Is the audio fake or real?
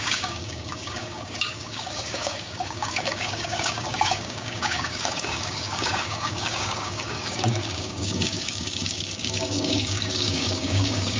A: fake